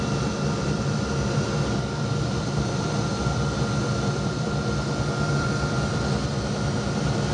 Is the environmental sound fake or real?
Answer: fake